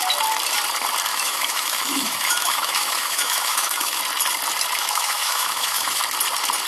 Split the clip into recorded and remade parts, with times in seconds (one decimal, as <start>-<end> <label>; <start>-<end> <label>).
0.0-1.1 recorded; 1.1-4.0 remade; 4.0-4.8 recorded; 4.8-6.0 remade; 6.0-6.7 recorded